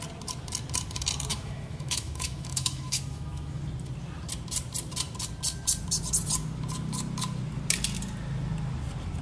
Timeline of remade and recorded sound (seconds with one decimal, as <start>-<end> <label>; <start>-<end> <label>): 0.0-1.3 recorded; 1.3-3.6 remade; 3.6-9.2 recorded